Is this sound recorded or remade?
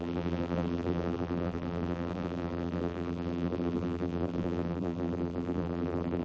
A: remade